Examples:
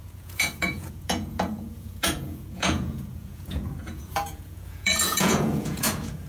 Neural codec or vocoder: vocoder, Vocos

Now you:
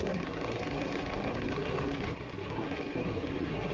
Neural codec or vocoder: codec, SNAC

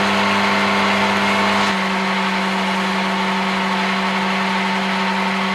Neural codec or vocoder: none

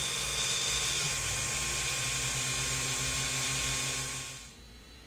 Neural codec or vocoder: none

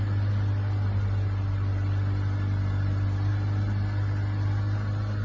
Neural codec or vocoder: none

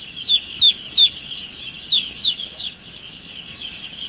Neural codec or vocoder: codec, DAC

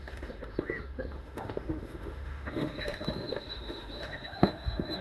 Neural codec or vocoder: autoencoder, DAC-VAE